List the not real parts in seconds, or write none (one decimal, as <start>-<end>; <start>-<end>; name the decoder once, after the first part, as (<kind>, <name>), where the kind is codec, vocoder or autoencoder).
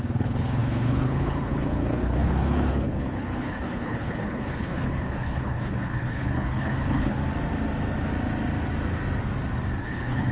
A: 0.0-7.2 (codec, HILCodec); 9.8-10.3